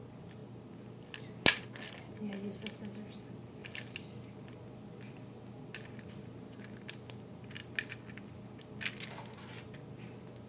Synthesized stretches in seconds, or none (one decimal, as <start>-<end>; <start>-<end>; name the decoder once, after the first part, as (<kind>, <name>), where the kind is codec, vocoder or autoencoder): none